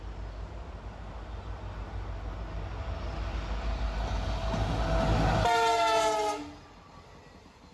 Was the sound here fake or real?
real